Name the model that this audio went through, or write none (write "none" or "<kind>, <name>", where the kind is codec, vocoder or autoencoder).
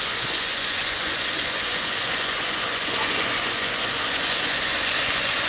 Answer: vocoder, Vocos